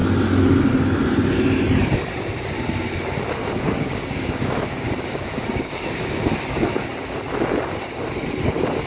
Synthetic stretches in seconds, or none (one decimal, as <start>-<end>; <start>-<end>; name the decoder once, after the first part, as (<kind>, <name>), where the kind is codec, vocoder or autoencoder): 3.4-6.9 (codec, DAC)